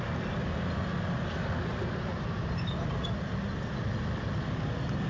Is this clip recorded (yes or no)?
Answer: yes